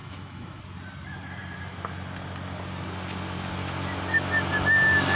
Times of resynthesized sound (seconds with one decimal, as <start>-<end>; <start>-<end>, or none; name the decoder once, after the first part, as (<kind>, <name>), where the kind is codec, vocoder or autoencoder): 0.0-0.6 (autoencoder, DAC-VAE)